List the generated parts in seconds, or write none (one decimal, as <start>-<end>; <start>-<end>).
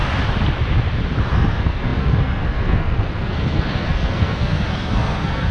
1.3-5.5